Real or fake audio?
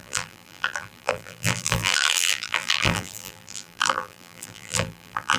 fake